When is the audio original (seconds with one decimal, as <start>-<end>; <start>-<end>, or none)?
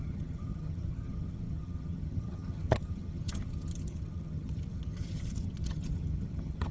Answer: none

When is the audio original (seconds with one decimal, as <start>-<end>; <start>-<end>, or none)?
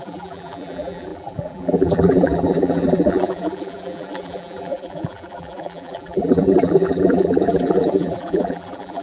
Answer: none